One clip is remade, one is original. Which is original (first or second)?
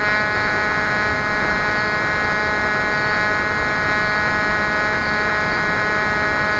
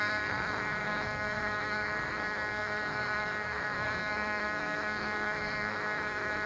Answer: first